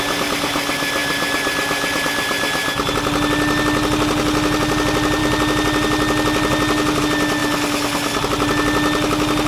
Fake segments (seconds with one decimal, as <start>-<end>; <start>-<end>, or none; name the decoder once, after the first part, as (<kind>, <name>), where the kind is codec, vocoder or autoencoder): none